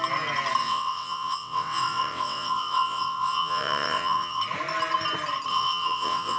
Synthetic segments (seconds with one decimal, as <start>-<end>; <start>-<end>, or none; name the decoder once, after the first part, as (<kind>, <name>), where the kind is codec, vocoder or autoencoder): 0.6-4.4 (vocoder, WaveNeXt); 5.5-6.4